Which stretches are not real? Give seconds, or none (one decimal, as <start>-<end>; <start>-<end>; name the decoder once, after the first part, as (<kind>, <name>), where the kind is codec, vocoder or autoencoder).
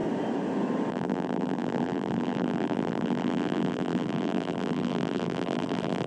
0.9-6.1 (vocoder, BigVGAN v2)